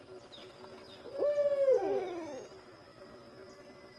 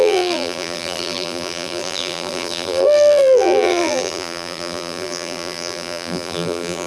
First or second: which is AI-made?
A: second